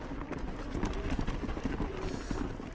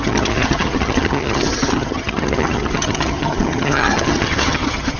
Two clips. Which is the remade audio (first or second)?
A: second